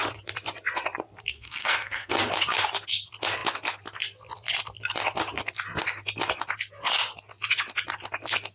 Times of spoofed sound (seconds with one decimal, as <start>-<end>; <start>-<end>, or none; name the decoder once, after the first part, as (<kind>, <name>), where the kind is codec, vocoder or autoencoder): 1.3-2.1 (codec, SNAC)